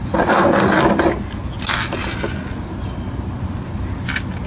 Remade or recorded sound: recorded